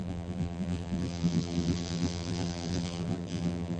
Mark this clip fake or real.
fake